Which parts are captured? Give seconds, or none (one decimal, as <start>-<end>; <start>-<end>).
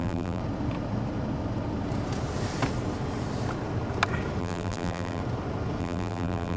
0.4-4.4; 5.2-5.8